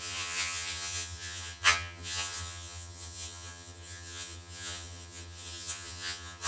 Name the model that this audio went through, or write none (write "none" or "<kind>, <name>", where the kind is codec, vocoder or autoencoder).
vocoder, HiFi-GAN